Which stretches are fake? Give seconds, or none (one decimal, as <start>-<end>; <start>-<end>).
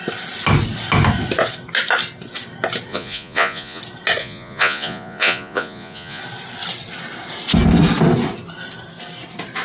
2.9-3.8; 4.2-6.2